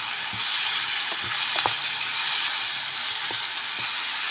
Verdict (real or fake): real